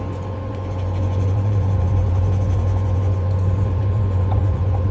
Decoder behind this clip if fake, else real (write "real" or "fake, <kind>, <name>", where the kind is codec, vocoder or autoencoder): fake, vocoder, Vocos